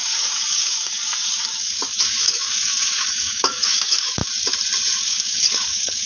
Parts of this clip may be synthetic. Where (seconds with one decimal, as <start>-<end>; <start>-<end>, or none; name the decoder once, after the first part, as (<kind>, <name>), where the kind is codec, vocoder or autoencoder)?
0.0-4.2 (codec, DAC); 5.0-6.1